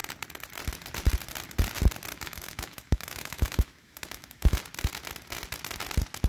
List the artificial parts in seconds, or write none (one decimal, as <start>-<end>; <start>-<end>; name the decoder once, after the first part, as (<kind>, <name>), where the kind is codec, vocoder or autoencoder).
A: 2.1-4.6 (autoencoder, DAC-VAE)